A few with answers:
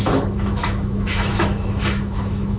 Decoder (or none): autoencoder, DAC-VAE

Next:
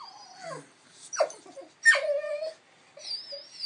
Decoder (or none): none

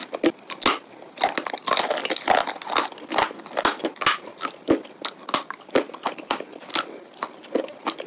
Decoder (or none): none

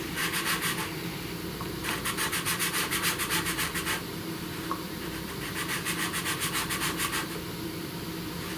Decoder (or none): vocoder, BigVGAN v2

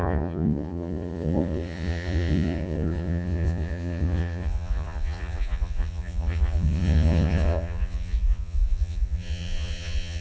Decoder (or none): vocoder, Vocos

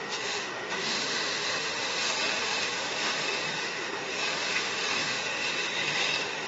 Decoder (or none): autoencoder, DAC-VAE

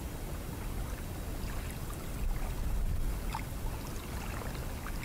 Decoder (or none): none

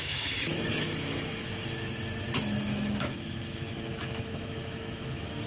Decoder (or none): autoencoder, DAC-VAE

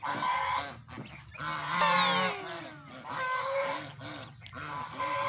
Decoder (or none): none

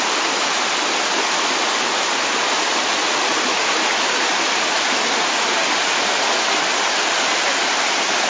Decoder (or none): none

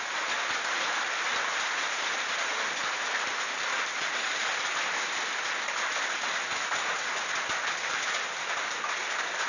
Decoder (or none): none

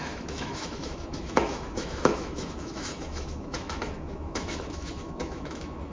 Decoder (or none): autoencoder, DAC-VAE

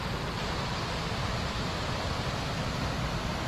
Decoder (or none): none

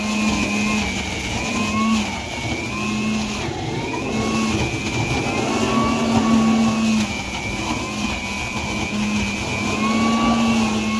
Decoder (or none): none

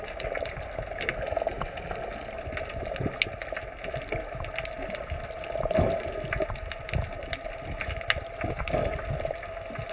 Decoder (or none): none